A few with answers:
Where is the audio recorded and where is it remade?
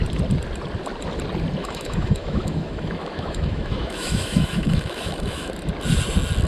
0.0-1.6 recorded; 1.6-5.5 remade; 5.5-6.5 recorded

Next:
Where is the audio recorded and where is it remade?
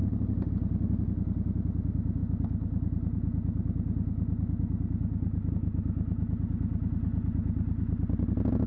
0.0-8.7 recorded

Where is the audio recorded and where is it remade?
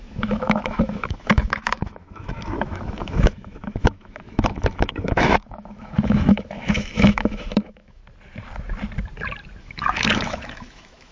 0.0-8.0 remade; 8.0-9.6 recorded; 9.6-11.1 remade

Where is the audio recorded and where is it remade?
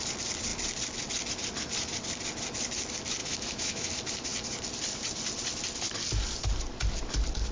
0.0-3.2 recorded; 3.2-3.9 remade; 3.9-7.5 recorded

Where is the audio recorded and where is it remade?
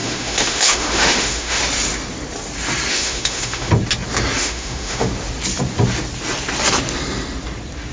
0.0-1.6 remade; 1.6-2.9 recorded; 2.9-3.7 remade; 3.7-4.4 recorded; 4.4-5.1 remade; 5.1-7.9 recorded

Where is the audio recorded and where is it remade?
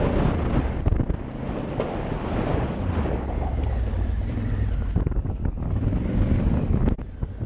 0.0-7.5 recorded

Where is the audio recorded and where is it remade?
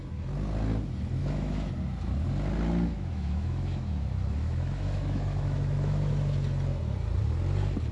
0.0-1.2 recorded; 1.2-1.7 remade; 1.7-2.9 recorded; 2.9-6.1 remade; 6.1-7.9 recorded